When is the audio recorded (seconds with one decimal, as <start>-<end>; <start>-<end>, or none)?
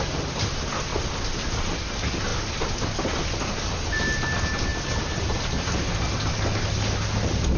0.0-7.6